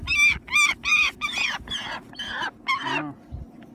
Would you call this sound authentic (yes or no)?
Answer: yes